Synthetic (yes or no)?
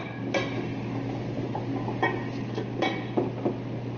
no